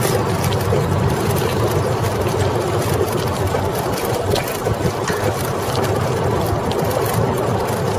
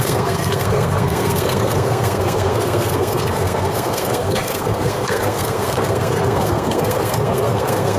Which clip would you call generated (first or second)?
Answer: second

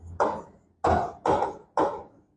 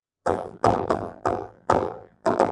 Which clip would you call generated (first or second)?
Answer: second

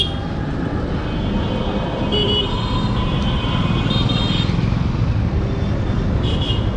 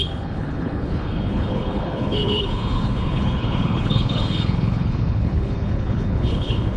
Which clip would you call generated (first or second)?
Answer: second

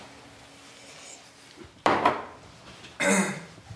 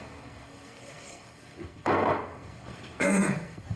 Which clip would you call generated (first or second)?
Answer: second